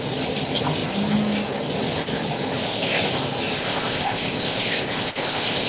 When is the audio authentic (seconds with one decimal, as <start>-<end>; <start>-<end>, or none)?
0.0-2.6; 3.1-3.6